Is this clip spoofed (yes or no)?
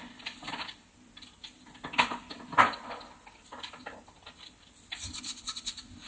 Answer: no